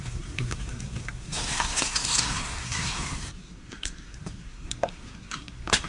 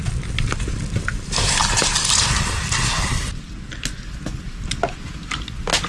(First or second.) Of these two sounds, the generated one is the first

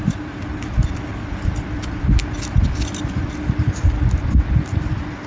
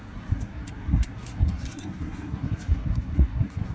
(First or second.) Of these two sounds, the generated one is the second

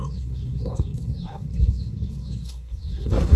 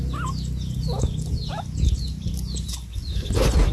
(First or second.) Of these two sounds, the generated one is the first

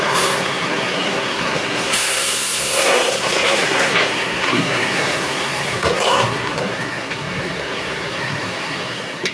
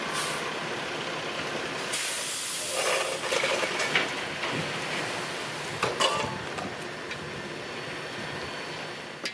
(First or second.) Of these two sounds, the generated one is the first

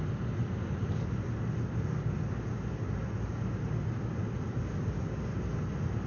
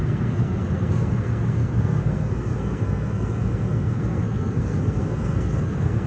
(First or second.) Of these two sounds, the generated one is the second